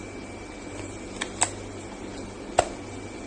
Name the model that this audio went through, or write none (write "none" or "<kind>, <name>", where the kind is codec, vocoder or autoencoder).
none